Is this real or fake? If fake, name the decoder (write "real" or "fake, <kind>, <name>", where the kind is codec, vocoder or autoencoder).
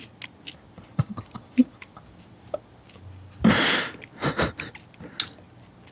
real